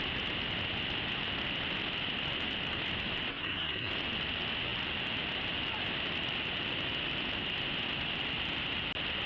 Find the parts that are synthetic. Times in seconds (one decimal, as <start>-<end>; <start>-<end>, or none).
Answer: 3.3-3.9